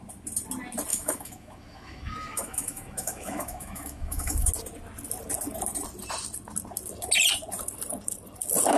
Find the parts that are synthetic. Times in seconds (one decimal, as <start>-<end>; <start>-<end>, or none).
0.9-4.5